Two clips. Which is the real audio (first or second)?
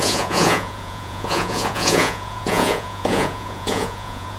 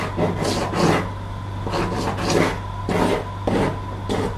second